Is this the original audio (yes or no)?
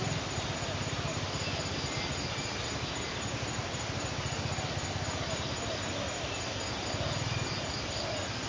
yes